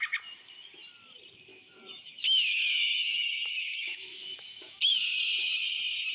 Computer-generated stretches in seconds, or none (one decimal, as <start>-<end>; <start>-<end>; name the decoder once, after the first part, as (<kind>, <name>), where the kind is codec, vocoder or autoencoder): 1.5-4.9 (autoencoder, DAC-VAE)